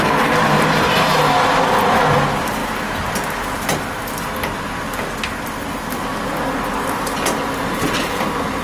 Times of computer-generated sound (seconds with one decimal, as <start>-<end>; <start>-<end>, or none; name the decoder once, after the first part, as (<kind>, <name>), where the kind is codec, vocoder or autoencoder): 0.0-1.2 (vocoder, BigVGAN v2); 6.1-6.7